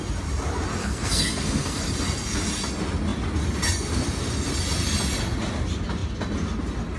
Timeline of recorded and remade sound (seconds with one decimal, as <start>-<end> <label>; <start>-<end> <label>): 0.0-0.8 recorded; 0.8-1.8 remade; 1.8-7.0 recorded